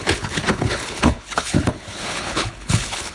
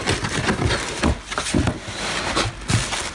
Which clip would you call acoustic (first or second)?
second